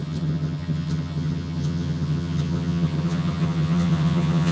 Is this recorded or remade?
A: remade